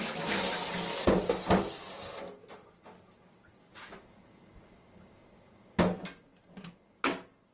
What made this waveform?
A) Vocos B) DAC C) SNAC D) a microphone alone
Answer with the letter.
D